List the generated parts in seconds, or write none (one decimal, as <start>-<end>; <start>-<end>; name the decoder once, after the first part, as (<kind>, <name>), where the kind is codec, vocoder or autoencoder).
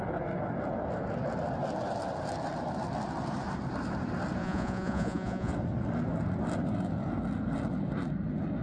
4.4-5.5 (vocoder, Vocos)